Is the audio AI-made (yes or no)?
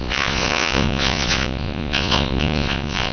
yes